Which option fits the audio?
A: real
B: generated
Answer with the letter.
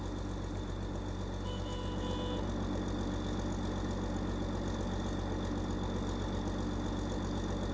A